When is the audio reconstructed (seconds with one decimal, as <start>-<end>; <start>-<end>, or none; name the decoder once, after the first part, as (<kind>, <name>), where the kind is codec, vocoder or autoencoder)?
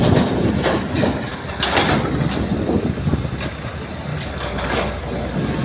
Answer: 1.3-1.8 (codec, DAC); 4.1-4.9